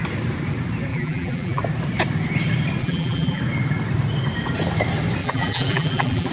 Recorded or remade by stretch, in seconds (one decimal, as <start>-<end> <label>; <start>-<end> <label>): 0.0-0.9 recorded; 0.9-1.6 remade; 1.6-2.8 recorded; 2.8-3.4 remade; 3.4-5.2 recorded; 5.2-6.3 remade